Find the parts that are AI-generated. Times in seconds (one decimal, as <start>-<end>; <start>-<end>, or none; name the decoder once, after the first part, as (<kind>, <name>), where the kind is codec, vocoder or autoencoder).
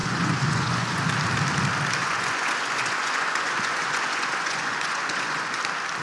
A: 0.0-1.0 (vocoder, Vocos); 2.0-5.6